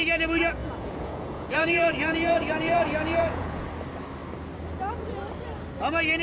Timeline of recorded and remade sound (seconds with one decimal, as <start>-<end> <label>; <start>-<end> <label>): 0.0-0.6 recorded; 0.6-3.7 remade; 3.7-6.2 recorded